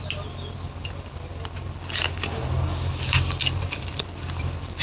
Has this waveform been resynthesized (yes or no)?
no